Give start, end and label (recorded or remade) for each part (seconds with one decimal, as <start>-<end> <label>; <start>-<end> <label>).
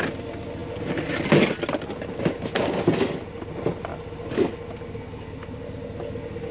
0.0-6.5 recorded